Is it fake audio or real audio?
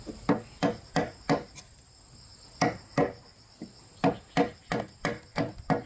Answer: real